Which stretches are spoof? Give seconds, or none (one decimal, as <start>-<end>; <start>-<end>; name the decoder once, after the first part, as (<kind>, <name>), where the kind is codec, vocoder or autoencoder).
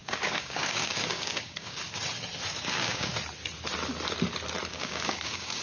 0.0-2.0 (codec, DAC); 2.5-3.1; 4.7-5.6